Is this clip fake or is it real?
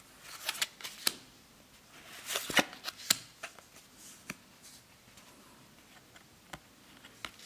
real